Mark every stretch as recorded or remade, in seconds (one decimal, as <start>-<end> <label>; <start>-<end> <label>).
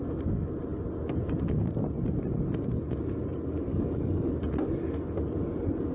0.0-3.7 recorded; 3.7-4.3 remade; 4.3-5.9 recorded